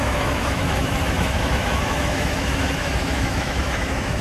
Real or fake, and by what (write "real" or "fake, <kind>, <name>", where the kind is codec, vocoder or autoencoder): fake, autoencoder, DAC-VAE